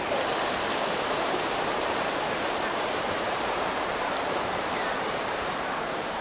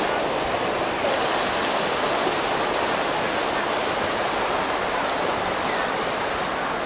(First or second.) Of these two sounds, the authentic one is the second